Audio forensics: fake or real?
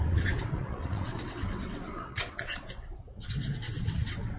fake